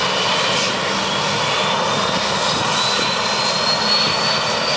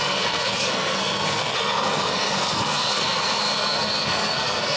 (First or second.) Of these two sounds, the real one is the first